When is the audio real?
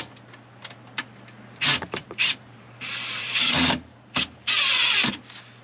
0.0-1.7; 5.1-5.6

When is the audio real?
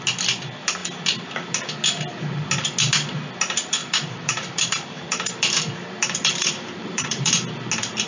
0.0-3.8; 7.3-8.1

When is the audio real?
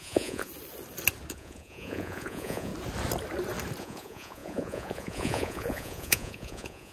0.5-1.3; 2.7-3.8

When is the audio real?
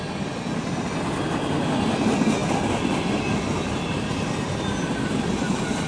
0.0-5.9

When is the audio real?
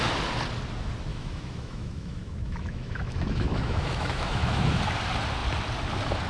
0.0-1.1; 4.8-6.3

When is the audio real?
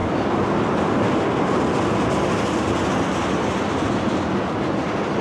0.0-5.2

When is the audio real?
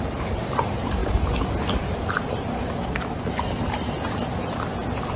0.0-5.2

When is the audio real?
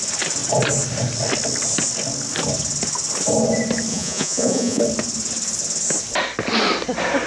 0.0-3.9; 4.8-7.3